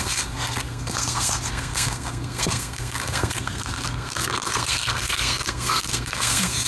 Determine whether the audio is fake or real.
fake